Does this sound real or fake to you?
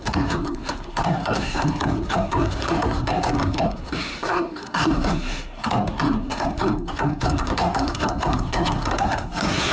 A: fake